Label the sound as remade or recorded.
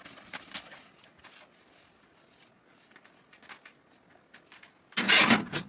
recorded